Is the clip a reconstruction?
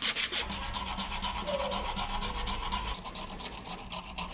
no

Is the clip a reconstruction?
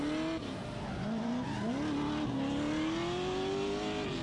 no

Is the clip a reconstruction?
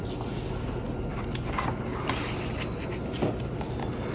no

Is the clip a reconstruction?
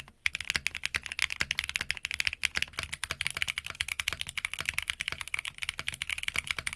no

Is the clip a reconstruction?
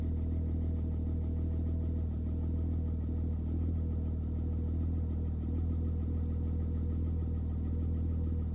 no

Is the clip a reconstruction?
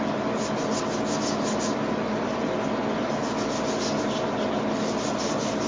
no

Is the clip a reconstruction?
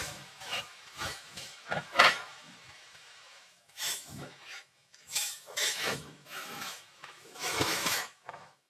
yes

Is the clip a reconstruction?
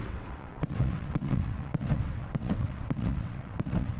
yes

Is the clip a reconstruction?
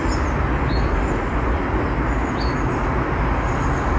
no